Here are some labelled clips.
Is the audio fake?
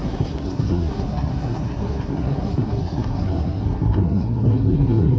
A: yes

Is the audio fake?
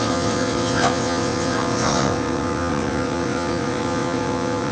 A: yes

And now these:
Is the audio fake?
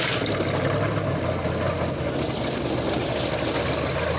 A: no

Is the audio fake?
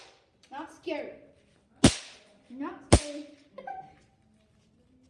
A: no